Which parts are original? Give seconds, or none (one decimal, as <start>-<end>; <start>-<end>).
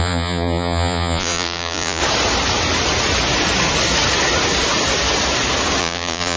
2.0-5.8